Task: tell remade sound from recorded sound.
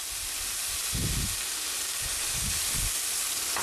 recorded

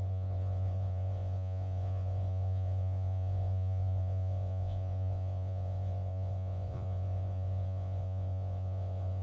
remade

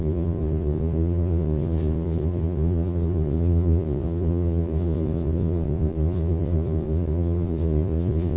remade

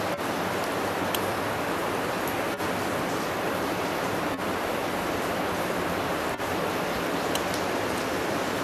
recorded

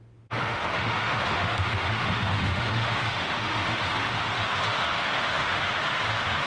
remade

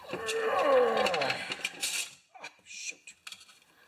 recorded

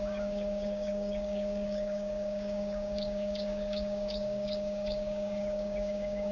remade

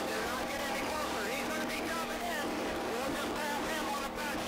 remade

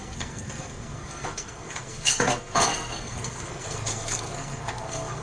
remade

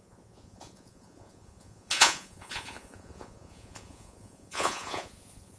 remade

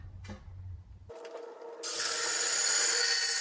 recorded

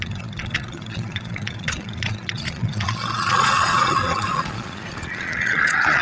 remade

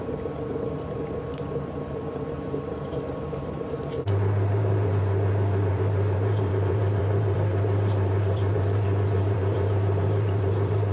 remade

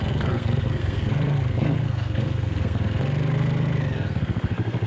remade